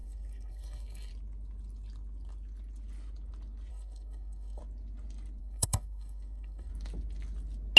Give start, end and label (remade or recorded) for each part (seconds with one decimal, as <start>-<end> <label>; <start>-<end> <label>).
0.0-1.1 remade; 1.1-3.7 recorded; 3.7-4.6 remade; 4.6-5.4 recorded; 5.4-6.7 remade; 6.7-7.8 recorded